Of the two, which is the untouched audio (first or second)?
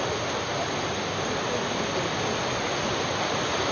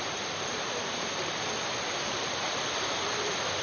first